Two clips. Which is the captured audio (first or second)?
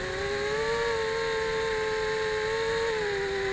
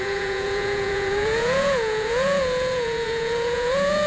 first